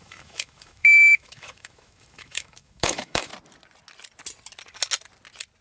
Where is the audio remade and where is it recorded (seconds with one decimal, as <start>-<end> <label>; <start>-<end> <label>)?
0.0-3.3 remade; 3.3-5.6 recorded